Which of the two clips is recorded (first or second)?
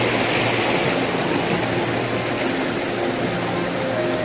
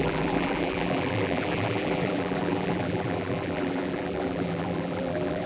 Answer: first